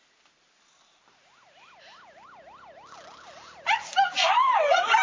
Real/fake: real